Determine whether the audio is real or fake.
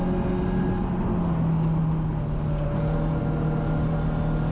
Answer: real